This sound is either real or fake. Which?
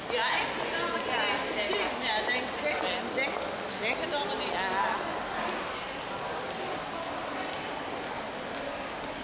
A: real